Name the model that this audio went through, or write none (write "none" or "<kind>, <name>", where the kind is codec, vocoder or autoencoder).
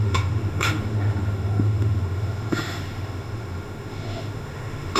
autoencoder, DAC-VAE